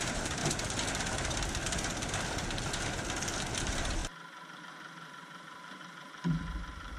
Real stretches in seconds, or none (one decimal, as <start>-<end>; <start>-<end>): 0.4-3.6; 4.0-4.6